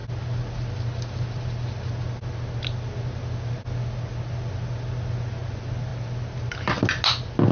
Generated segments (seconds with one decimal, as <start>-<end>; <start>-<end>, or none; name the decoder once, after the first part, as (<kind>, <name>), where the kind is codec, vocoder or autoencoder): none